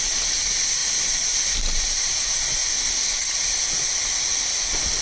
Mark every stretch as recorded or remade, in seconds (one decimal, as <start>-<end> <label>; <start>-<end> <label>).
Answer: 0.0-5.0 recorded

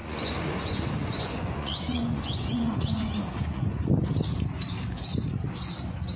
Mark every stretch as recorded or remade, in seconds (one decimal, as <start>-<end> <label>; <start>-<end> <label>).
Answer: 0.0-3.7 remade; 3.7-6.2 recorded

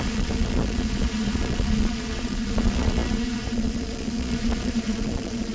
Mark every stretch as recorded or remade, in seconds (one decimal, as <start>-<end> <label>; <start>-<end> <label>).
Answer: 0.0-5.5 remade